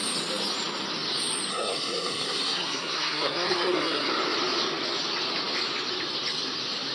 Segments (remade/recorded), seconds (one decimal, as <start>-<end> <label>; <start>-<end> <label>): 0.0-1.5 recorded; 1.5-4.1 remade; 4.1-6.9 recorded